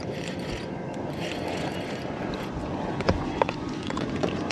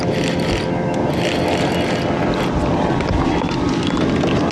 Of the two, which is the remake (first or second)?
first